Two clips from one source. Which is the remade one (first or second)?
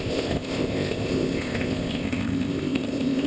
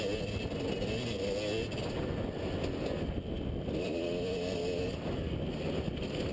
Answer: first